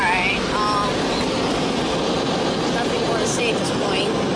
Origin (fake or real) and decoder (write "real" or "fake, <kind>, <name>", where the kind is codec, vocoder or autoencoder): real